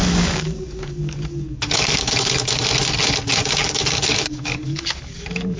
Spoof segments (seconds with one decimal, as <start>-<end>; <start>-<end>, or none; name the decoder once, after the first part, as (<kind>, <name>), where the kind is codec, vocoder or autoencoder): 0.0-2.5 (codec, DAC); 3.4-5.6